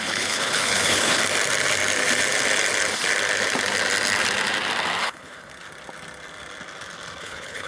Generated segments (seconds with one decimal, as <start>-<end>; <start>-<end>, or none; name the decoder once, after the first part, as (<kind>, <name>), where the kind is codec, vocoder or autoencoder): 0.0-1.2 (codec, HILCodec); 5.0-5.5; 7.2-7.7

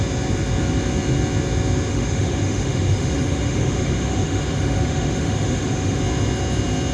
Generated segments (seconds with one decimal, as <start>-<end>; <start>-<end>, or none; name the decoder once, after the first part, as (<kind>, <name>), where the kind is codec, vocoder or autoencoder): 1.9-6.0 (autoencoder, DAC-VAE)

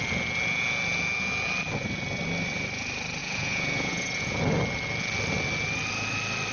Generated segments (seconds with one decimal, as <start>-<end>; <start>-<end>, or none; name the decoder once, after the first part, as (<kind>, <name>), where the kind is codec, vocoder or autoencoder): 3.2-4.4 (vocoder, Vocos)